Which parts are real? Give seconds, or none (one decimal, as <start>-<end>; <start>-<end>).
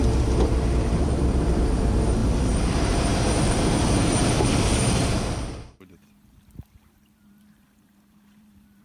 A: none